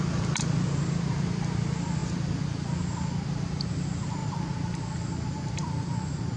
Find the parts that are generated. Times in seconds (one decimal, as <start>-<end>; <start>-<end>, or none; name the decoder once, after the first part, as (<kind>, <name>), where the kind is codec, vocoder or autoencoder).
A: none

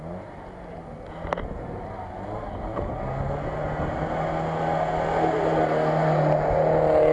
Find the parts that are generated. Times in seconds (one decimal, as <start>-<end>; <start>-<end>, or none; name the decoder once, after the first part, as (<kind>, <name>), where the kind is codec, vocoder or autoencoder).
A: none

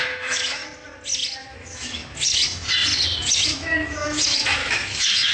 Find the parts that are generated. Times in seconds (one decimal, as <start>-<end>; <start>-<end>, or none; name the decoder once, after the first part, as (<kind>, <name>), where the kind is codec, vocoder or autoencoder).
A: 0.0-0.6 (autoencoder, DAC-VAE); 1.4-2.4; 3.2-5.3